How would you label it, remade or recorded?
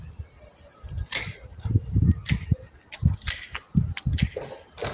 recorded